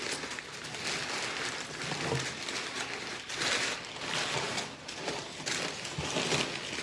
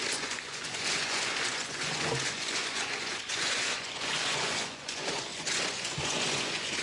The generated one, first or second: second